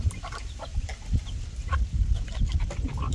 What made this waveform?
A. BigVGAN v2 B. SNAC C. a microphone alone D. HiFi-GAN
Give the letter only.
C